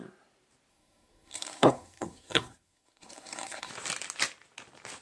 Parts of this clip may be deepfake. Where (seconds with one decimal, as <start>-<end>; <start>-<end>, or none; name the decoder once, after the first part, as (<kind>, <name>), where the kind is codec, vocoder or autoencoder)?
0.7-3.7 (codec, SNAC)